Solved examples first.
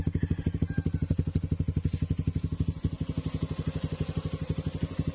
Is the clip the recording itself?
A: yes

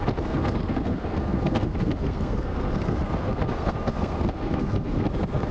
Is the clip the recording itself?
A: no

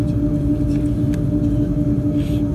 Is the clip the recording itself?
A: yes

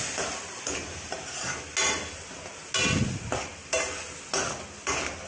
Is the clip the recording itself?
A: yes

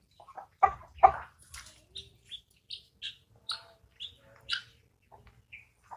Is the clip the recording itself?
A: yes